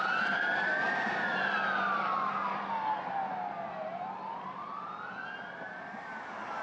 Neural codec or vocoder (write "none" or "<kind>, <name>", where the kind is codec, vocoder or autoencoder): vocoder, BigVGAN v2